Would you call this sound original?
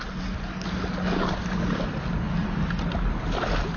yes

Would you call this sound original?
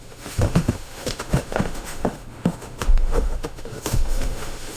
no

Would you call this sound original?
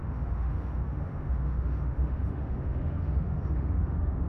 no